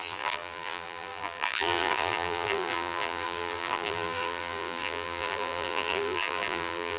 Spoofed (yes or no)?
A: yes